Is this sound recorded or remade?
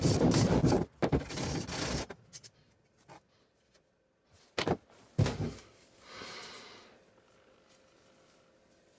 recorded